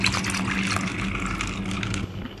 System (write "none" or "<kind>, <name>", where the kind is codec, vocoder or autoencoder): none